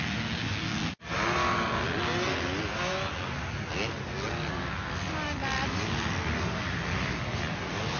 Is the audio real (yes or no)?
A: yes